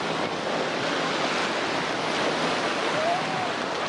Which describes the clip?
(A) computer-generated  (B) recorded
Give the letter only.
B